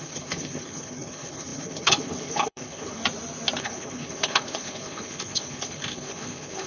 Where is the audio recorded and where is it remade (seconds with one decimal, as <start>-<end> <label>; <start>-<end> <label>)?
0.0-3.0 remade; 3.0-3.6 recorded; 3.6-6.7 remade